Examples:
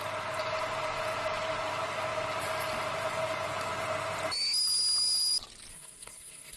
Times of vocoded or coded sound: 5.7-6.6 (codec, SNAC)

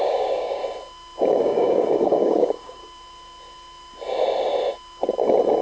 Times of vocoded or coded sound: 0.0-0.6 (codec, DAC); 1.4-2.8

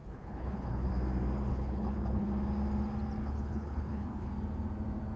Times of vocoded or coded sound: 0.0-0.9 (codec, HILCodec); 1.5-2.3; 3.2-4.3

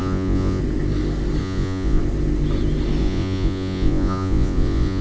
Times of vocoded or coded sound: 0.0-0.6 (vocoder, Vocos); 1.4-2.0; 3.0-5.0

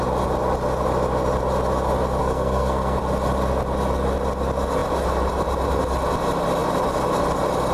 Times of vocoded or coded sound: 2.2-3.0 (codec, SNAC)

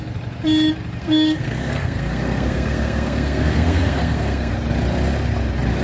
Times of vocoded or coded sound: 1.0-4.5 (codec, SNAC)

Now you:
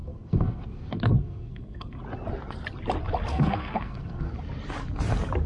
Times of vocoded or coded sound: 0.0-2.0 (codec, SNAC); 3.3-4.3

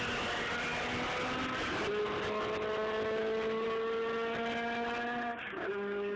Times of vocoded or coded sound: 5.3-6.2 (codec, DAC)